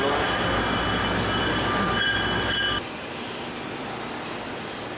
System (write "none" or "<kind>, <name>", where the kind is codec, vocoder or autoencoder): none